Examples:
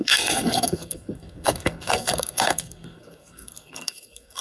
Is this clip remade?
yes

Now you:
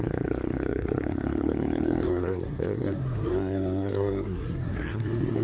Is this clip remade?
yes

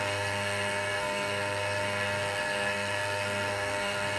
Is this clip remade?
yes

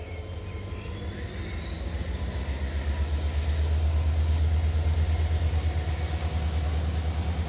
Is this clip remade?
no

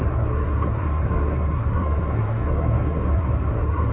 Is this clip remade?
yes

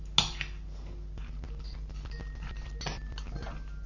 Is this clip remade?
no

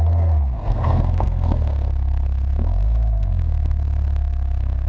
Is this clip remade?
yes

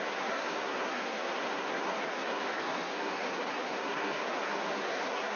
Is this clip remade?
yes